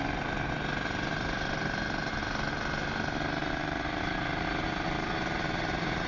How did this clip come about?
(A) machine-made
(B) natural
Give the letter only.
B